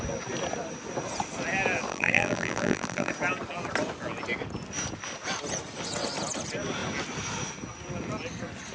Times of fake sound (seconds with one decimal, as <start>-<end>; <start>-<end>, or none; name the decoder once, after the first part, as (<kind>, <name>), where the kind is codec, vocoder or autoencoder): 1.9-3.1 (vocoder, BigVGAN v2)

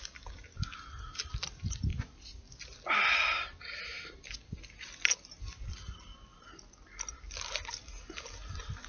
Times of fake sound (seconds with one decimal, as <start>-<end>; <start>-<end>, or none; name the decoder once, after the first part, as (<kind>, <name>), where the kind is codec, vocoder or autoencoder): none

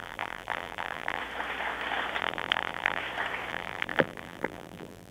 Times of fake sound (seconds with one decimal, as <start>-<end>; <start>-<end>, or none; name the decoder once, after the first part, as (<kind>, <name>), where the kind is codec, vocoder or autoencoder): 0.0-1.2 (vocoder, BigVGAN v2); 2.2-3.0; 3.5-5.1

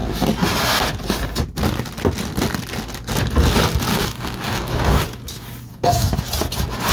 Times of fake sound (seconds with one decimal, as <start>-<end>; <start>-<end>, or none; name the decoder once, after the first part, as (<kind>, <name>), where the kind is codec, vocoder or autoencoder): 3.9-5.0 (codec, DAC); 5.7-6.2

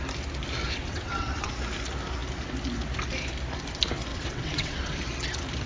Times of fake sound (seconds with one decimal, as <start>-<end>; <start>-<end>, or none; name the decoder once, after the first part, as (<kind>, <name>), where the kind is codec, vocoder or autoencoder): 0.6-1.5 (vocoder, WaveNeXt); 4.1-5.0

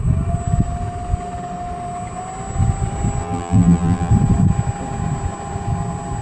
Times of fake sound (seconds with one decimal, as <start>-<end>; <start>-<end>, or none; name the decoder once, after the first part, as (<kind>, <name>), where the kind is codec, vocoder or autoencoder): 3.2-4.1 (vocoder, BigVGAN v2)

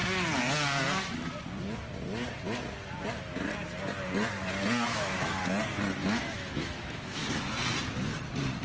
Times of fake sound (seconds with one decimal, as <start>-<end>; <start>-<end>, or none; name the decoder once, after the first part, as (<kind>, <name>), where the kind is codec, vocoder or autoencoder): 4.9-5.4 (autoencoder, DAC-VAE); 6.0-7.2

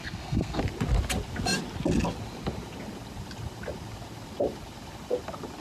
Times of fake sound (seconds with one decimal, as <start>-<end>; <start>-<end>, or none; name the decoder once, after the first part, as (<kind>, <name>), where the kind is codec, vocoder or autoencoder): 0.0-0.6 (codec, SNAC)